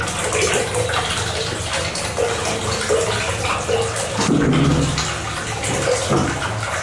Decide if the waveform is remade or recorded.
recorded